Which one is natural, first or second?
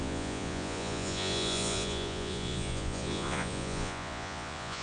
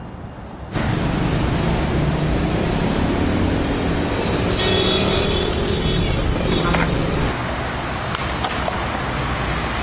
second